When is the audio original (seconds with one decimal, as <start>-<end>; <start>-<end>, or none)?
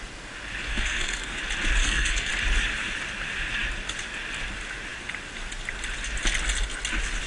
0.0-0.7; 1.4-1.8; 2.3-7.3